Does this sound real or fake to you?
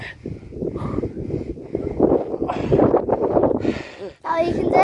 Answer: real